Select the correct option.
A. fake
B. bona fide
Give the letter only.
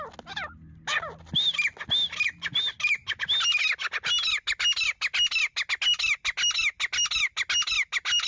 B